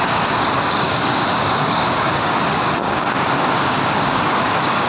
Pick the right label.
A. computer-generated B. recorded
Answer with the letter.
A